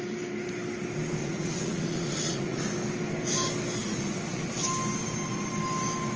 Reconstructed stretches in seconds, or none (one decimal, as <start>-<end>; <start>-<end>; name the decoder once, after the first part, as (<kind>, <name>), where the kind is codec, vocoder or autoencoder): 1.2-2.6 (vocoder, Vocos); 3.8-4.5